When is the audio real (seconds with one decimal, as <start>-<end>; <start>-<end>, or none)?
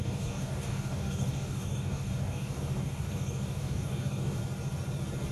4.4-5.3